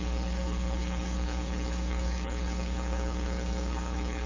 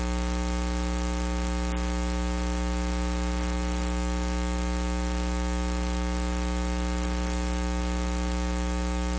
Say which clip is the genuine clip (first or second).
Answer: second